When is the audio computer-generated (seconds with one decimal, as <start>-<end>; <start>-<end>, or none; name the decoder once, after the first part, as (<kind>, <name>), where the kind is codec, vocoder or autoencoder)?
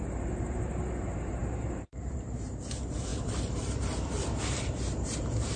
0.0-5.6 (vocoder, BigVGAN v2)